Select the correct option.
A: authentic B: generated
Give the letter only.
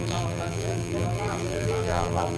B